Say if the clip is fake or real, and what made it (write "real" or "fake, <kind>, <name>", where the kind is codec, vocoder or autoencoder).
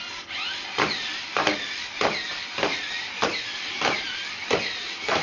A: fake, vocoder, BigVGAN v2